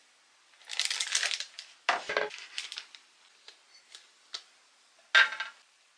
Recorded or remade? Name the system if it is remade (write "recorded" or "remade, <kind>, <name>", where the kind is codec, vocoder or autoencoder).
recorded